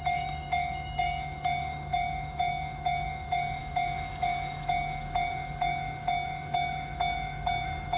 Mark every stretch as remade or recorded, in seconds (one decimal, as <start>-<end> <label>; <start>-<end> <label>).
0.0-8.0 remade